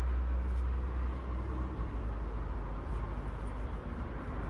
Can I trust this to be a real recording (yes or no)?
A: yes